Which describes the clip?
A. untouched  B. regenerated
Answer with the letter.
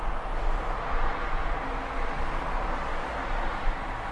A